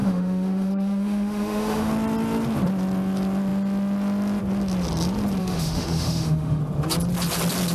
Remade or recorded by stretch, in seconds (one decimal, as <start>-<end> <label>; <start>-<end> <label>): 0.0-1.9 remade; 1.9-5.4 recorded; 5.4-6.6 remade; 6.6-7.7 recorded